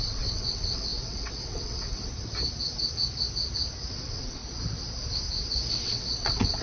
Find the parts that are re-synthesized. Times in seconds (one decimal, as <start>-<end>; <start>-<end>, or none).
0.0-2.1; 3.9-4.4; 5.7-6.6